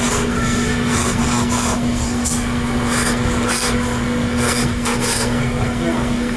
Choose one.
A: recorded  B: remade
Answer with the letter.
B